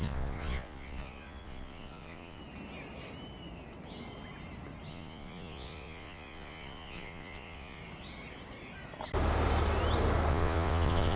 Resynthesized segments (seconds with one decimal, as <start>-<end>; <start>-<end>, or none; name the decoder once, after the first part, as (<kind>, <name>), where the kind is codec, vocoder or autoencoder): 0.0-2.4 (vocoder, Vocos); 4.9-7.8; 10.3-11.2